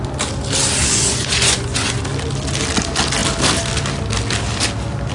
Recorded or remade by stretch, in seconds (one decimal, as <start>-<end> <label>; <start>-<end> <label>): 0.0-0.8 recorded; 0.8-2.0 remade; 2.0-5.1 recorded